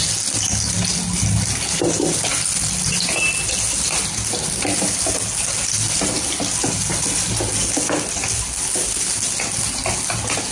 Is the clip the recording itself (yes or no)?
yes